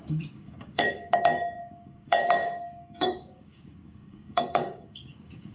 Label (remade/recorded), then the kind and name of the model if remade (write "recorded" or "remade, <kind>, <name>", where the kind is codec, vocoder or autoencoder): remade, codec, DAC